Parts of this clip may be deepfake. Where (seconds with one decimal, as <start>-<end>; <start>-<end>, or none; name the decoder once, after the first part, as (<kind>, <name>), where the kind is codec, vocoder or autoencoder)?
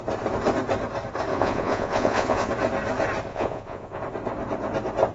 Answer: 1.3-2.5 (vocoder, Vocos); 3.3-4.0